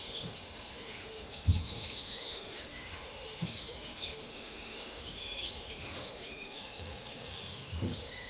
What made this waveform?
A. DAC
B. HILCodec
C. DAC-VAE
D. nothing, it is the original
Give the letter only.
C